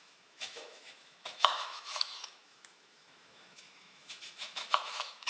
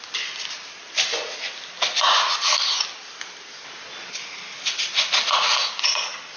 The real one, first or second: second